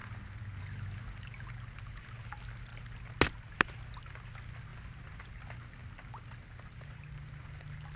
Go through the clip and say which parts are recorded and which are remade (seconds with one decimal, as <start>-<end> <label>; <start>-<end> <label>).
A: 0.0-8.0 recorded